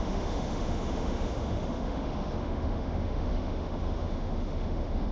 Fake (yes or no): yes